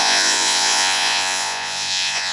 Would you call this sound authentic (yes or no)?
no